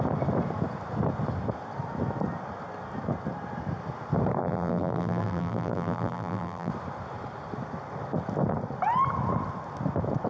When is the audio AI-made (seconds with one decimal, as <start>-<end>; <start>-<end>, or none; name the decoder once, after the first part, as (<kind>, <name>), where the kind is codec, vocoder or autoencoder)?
4.4-6.7 (vocoder, BigVGAN v2)